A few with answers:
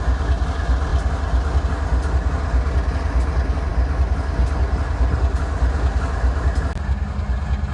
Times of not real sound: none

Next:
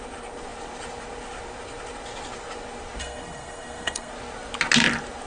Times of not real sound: 3.0-4.1 (codec, SNAC)

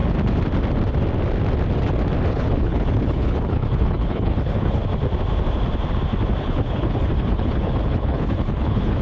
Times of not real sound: 2.3-4.8 (codec, HILCodec); 6.4-9.0

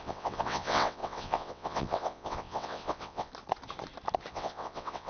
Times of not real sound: 0.0-3.3 (vocoder, WaveNeXt); 4.3-5.1

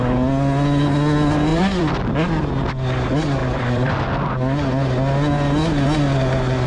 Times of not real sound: 1.5-2.5 (vocoder, BigVGAN v2); 3.4-3.9

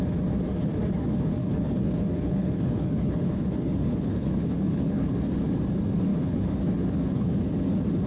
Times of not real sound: 1.4-5.1 (codec, HILCodec); 6.1-7.4

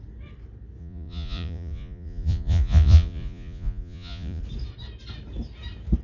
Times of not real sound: 0.8-4.4 (vocoder, Vocos)

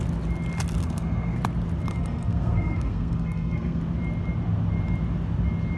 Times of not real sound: 0.8-1.4 (codec, SNAC); 1.9-3.8